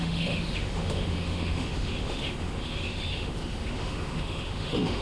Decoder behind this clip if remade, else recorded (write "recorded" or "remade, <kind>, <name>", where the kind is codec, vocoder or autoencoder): remade, autoencoder, DAC-VAE